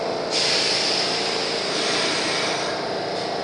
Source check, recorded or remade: remade